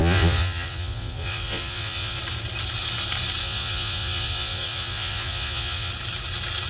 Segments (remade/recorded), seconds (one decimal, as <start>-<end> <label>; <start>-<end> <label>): 0.0-2.2 remade; 2.2-3.4 recorded; 3.4-5.9 remade; 5.9-6.7 recorded